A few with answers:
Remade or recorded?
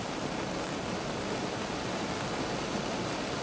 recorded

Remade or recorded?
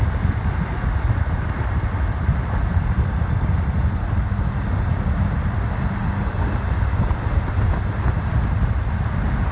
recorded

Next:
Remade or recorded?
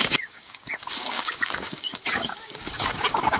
remade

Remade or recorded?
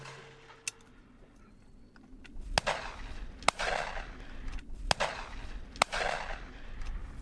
recorded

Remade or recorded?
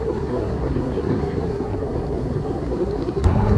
remade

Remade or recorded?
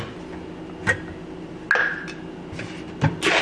recorded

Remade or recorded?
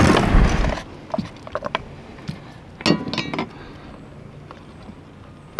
recorded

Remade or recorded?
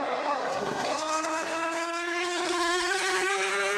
remade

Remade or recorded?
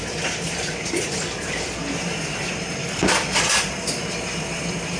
remade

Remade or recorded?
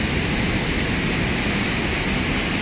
recorded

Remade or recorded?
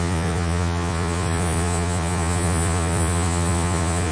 remade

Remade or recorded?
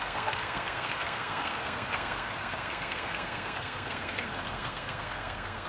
remade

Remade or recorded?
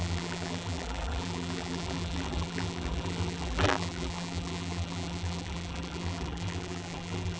remade